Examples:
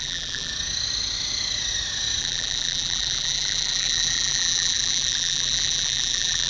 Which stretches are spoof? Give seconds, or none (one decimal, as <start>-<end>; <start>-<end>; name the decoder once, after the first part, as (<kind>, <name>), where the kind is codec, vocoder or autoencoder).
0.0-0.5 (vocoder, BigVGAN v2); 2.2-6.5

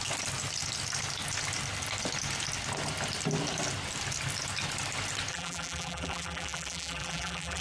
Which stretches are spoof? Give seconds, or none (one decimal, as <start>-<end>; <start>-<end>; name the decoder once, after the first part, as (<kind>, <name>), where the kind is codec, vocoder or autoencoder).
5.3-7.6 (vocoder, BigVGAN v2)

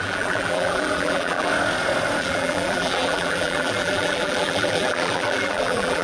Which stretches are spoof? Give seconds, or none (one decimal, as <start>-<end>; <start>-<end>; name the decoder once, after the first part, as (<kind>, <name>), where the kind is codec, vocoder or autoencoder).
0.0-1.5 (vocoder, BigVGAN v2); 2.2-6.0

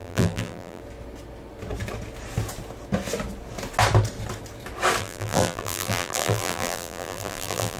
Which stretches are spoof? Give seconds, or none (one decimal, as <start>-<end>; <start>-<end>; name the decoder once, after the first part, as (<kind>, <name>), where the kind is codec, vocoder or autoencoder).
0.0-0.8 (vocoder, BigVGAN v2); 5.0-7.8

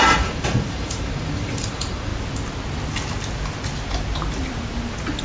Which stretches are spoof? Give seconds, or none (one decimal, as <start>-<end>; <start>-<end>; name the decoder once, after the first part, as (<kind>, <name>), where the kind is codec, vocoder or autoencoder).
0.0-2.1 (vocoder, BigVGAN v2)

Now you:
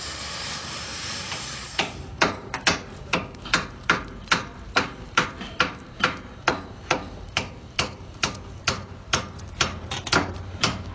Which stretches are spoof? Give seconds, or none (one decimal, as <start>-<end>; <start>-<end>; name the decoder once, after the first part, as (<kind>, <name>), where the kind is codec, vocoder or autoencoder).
0.0-10.9 (vocoder, BigVGAN v2)